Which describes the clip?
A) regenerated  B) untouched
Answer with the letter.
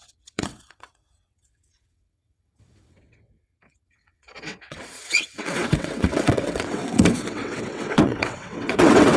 A